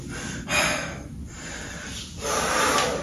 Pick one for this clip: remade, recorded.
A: recorded